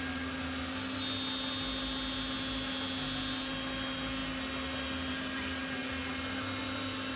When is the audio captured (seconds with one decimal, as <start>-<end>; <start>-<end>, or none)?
0.0-7.2